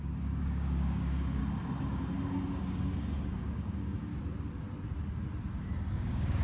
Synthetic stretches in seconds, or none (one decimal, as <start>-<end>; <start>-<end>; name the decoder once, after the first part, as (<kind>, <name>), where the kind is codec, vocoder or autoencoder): 0.0-1.4 (codec, DAC); 2.6-4.1; 5.9-6.4

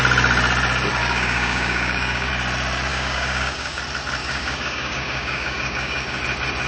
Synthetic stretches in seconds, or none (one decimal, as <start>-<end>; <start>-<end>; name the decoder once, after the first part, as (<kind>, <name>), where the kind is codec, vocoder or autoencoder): 1.0-2.3 (codec, DAC); 2.9-3.8; 4.2-6.2